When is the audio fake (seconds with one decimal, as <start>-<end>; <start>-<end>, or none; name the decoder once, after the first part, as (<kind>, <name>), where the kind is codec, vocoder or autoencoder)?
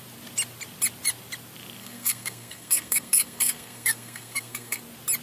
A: 1.8-4.8 (codec, SNAC)